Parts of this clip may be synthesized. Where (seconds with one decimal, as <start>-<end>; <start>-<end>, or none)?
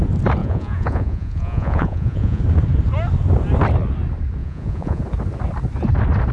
0.4-2.4; 4.4-5.0